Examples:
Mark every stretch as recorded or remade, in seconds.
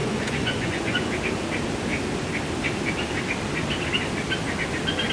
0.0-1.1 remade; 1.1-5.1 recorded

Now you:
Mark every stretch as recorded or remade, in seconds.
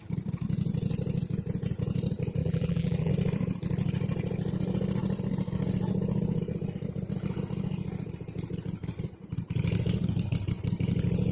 0.0-2.4 recorded; 2.4-3.1 remade; 3.1-11.3 recorded